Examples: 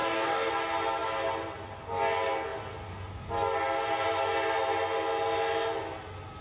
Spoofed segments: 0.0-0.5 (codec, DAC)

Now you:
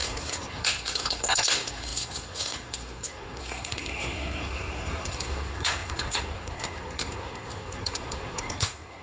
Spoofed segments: 0.0-9.0 (codec, SNAC)

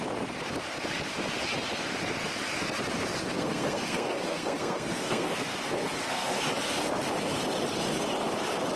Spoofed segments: 3.2-6.4 (codec, SNAC)